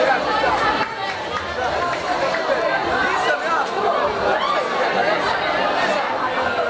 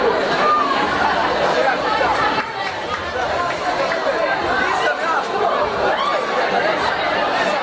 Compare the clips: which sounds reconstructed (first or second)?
second